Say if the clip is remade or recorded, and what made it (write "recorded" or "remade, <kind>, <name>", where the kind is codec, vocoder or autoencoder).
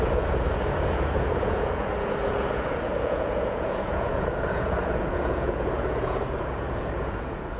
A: remade, vocoder, Vocos